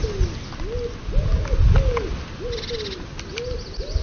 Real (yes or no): yes